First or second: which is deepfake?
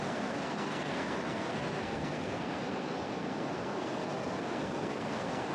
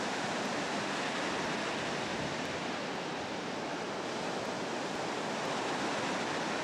first